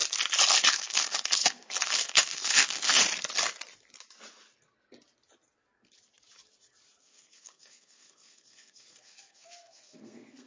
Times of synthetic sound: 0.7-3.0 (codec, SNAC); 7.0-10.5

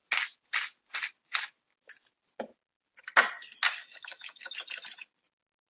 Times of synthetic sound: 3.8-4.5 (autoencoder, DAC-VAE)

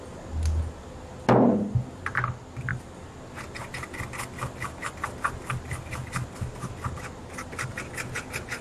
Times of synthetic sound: none